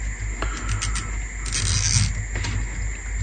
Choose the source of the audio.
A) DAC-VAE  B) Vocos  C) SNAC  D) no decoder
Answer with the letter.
D